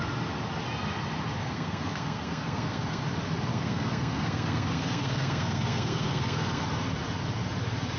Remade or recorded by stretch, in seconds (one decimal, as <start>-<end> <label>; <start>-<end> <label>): 0.0-1.4 recorded; 1.4-3.0 remade; 3.0-3.5 recorded; 3.5-6.6 remade; 6.6-8.0 recorded